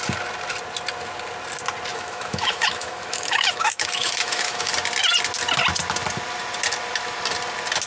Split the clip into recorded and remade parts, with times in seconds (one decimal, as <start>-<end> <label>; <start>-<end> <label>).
0.0-1.9 recorded; 1.9-4.7 remade; 4.7-7.9 recorded

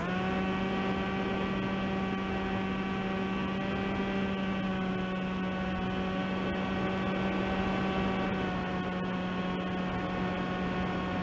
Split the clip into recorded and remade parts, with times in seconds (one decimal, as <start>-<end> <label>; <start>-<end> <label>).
0.0-11.2 recorded